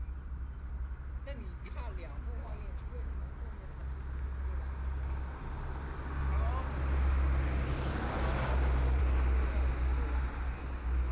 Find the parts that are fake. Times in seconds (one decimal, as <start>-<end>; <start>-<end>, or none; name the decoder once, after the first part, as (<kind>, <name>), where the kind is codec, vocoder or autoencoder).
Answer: none